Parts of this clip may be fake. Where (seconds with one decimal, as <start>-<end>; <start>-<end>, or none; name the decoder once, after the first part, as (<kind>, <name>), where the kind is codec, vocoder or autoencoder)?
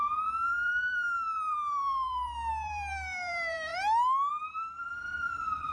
0.0-3.7 (vocoder, BigVGAN v2); 4.3-5.7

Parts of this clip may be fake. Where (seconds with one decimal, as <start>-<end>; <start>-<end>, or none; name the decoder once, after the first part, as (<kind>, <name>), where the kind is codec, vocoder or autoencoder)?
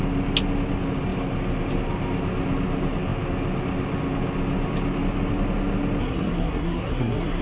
6.0-7.4 (codec, SNAC)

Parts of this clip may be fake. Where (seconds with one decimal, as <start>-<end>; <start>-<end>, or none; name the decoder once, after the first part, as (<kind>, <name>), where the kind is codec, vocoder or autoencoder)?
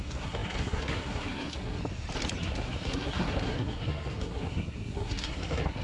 0.0-1.8 (codec, SNAC); 2.4-5.8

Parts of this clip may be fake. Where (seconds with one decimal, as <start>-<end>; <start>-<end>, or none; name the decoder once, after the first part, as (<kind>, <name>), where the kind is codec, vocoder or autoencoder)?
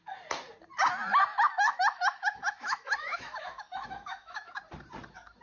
1.3-4.5 (autoencoder, DAC-VAE)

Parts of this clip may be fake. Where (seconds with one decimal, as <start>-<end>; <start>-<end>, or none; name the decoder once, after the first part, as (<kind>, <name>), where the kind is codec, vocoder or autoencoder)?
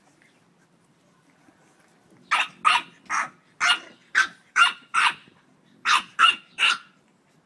4.0-7.0 (vocoder, BigVGAN v2)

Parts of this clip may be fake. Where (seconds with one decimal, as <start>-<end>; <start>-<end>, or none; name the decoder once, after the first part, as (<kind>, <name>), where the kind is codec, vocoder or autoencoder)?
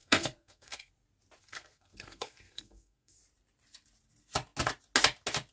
0.0-0.9 (codec, SNAC); 1.4-3.2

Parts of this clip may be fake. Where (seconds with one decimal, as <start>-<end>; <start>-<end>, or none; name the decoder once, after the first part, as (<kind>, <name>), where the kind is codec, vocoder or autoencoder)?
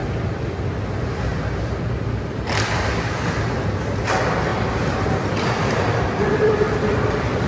0.0-0.8 (vocoder, BigVGAN v2); 1.3-3.3; 4.5-7.5